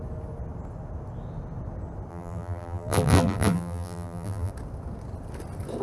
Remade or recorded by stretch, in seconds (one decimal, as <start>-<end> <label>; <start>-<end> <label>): 0.0-2.1 recorded; 2.1-4.5 remade; 4.5-5.8 recorded